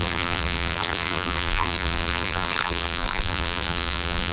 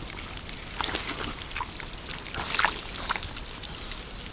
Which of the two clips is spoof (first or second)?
first